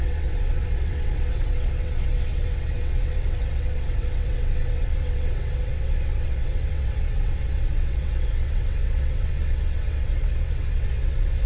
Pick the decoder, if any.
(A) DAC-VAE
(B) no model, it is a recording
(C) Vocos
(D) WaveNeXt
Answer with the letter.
D